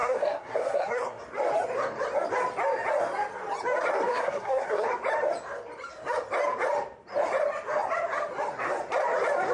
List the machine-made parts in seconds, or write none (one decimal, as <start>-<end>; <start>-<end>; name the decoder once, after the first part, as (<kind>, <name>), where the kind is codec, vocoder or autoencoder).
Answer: 0.0-1.2 (codec, SNAC); 4.1-4.9